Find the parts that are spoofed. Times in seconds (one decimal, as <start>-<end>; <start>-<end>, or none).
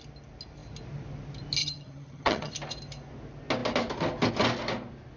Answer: 1.6-2.5